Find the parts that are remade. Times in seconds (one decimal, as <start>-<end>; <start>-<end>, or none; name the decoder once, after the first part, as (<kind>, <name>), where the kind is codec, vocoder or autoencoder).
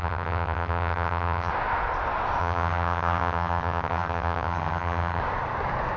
0.0-1.5 (vocoder, HiFi-GAN); 2.4-5.2